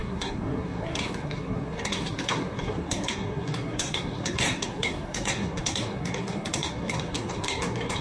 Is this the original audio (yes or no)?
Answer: no